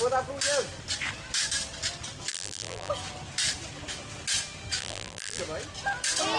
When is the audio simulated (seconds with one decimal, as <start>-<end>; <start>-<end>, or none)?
2.3-2.9; 4.8-5.4